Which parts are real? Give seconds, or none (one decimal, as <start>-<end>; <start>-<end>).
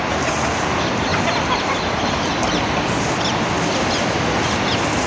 0.0-1.1; 4.2-5.1